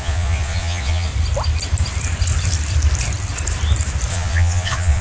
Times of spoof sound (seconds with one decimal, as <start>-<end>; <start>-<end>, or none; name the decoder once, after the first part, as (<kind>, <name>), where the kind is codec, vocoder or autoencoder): 0.0-1.1 (vocoder, Vocos); 4.1-5.0